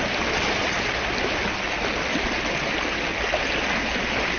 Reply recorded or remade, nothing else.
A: recorded